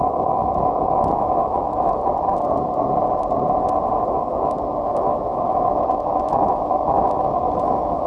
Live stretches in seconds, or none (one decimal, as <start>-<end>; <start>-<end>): 2.0-4.1